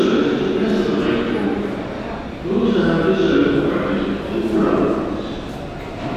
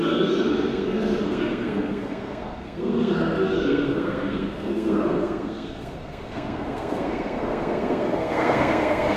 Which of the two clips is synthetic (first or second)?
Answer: second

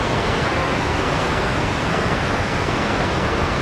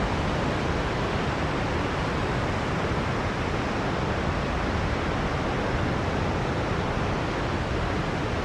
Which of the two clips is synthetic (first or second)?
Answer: first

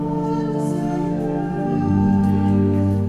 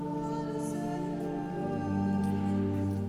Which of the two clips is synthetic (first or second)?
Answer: first